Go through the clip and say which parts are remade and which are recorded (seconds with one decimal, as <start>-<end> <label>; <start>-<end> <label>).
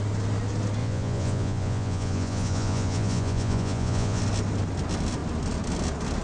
0.0-0.8 recorded; 0.8-4.2 remade; 4.2-6.2 recorded